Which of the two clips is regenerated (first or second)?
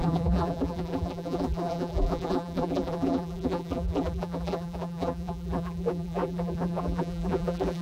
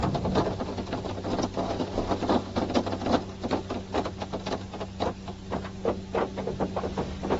first